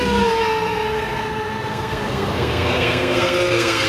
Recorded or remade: remade